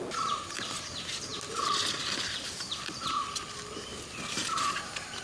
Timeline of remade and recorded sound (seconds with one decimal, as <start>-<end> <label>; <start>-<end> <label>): 0.0-5.2 recorded